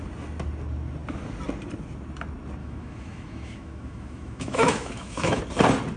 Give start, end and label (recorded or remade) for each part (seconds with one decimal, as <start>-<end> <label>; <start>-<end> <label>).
0.0-2.6 recorded; 2.6-5.4 remade; 5.4-6.0 recorded